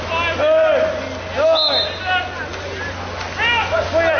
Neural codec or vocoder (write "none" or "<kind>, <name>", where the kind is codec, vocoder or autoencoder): none